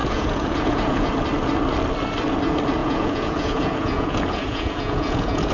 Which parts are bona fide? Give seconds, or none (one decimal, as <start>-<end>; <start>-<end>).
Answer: 1.1-2.8